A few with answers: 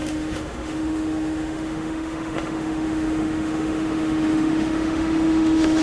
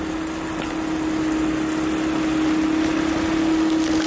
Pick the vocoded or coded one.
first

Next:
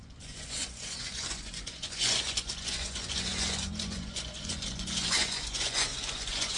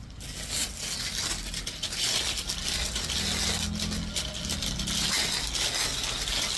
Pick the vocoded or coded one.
first